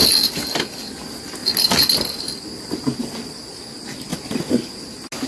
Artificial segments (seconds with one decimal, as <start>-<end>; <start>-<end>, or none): none